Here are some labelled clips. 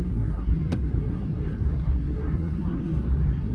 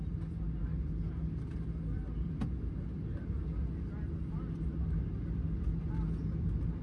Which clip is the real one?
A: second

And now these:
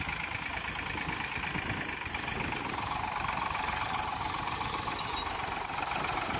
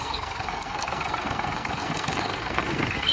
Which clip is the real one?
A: first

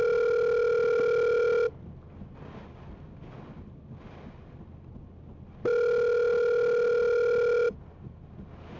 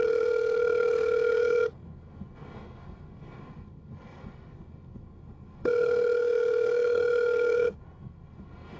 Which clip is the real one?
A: first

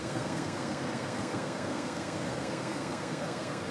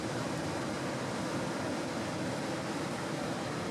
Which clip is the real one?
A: second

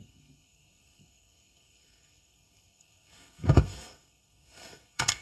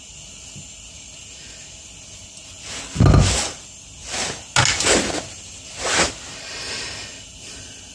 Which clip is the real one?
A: second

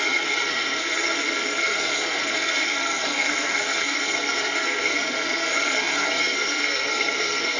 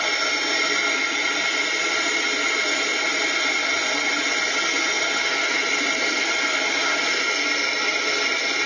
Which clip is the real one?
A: second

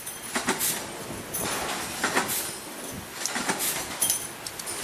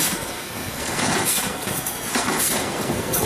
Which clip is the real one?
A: first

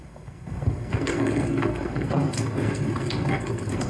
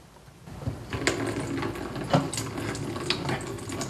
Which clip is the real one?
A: second